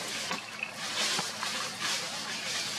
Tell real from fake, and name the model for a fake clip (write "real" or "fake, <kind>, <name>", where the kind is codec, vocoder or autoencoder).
real